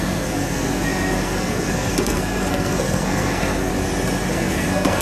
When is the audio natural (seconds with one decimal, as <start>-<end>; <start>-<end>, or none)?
3.7-4.3